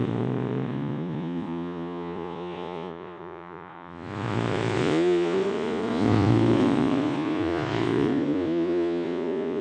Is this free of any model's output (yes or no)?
no